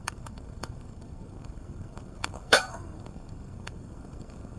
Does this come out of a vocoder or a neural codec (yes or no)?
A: yes